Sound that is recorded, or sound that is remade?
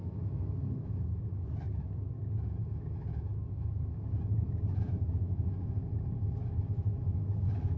remade